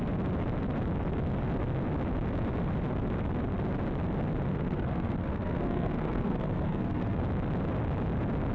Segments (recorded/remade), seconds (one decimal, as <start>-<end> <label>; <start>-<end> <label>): 0.0-4.5 recorded; 4.5-7.2 remade; 7.2-8.5 recorded

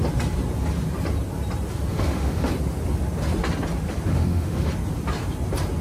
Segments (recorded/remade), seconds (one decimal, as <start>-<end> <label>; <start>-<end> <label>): 0.0-1.9 recorded; 1.9-2.5 remade; 2.5-4.1 recorded; 4.1-4.7 remade; 4.7-5.8 recorded

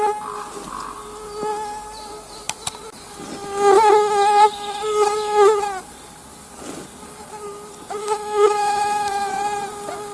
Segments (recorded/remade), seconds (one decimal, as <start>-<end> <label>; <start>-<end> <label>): 0.0-8.0 recorded; 8.0-9.3 remade; 9.3-10.1 recorded